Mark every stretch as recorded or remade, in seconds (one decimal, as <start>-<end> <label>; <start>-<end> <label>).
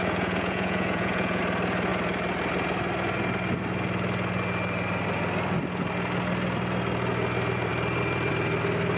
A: 0.0-1.4 remade; 1.4-9.0 recorded